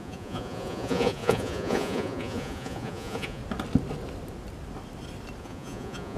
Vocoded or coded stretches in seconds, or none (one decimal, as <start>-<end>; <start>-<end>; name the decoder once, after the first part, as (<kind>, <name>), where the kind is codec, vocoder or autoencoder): 0.0-3.4 (vocoder, Vocos); 5.4-6.2